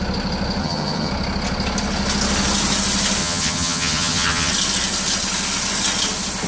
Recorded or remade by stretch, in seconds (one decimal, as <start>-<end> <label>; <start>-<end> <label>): 0.0-0.6 recorded; 0.6-1.1 remade; 1.1-3.2 recorded; 3.2-4.5 remade; 4.5-6.5 recorded

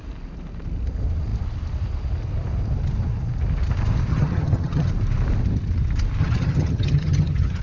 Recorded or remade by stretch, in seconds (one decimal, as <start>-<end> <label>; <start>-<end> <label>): 0.0-4.1 recorded; 4.1-4.9 remade; 4.9-6.2 recorded; 6.2-7.6 remade

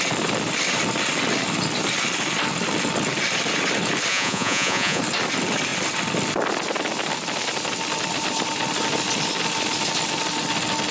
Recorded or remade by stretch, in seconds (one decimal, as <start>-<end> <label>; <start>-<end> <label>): 0.0-4.1 recorded; 4.1-5.0 remade; 5.0-10.9 recorded

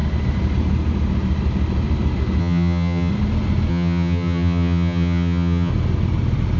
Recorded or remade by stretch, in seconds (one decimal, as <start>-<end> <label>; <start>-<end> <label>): 0.0-2.4 recorded; 2.4-3.1 remade; 3.1-3.7 recorded; 3.7-5.7 remade; 5.7-6.6 recorded

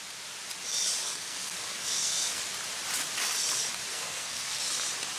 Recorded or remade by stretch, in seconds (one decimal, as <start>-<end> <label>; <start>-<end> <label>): 0.0-1.0 recorded; 1.0-2.4 remade; 2.4-3.9 recorded; 3.9-4.6 remade; 4.6-5.2 recorded

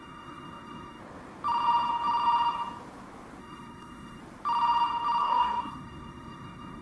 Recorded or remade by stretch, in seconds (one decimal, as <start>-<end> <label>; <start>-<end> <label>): 0.0-1.0 remade; 1.0-3.4 recorded; 3.4-4.2 remade; 4.2-5.2 recorded; 5.2-6.8 remade

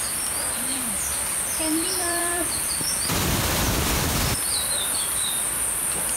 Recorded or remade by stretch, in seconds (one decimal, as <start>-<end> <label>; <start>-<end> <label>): 0.0-0.7 recorded; 0.7-4.4 remade; 4.4-6.2 recorded